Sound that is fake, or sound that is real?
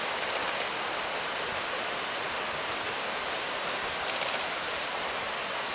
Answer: real